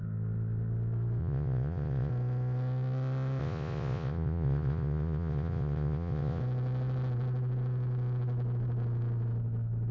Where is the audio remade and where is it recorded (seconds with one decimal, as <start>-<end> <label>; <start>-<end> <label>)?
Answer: 0.0-1.2 recorded; 1.2-2.1 remade; 2.1-3.4 recorded; 3.4-6.4 remade; 6.4-9.9 recorded